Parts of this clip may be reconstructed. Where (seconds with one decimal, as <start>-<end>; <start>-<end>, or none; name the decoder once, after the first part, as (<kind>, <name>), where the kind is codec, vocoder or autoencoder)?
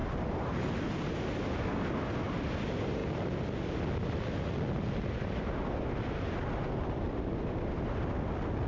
none